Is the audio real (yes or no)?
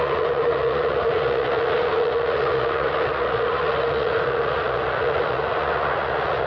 no